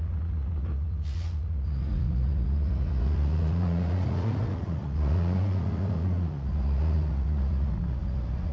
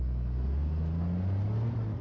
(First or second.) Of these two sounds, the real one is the second